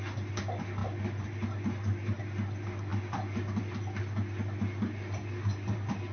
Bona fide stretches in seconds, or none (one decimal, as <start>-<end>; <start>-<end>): 0.0-6.1